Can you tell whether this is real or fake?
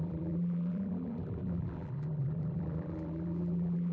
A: fake